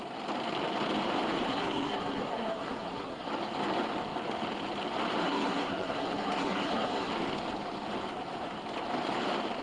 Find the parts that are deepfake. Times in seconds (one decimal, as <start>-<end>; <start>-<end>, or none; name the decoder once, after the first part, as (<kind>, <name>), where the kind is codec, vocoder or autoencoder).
1.5-3.3 (codec, SNAC); 5.2-7.1